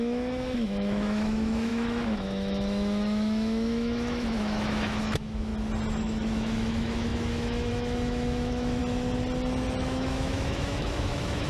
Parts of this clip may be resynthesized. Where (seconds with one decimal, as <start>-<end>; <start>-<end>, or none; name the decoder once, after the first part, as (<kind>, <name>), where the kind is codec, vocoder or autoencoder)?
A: 0.0-5.5 (autoencoder, DAC-VAE); 6.0-8.8; 9.8-11.5